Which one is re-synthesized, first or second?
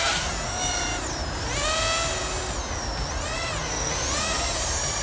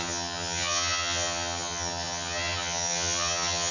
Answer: second